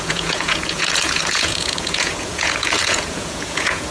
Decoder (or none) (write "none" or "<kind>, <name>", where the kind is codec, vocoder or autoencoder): vocoder, Vocos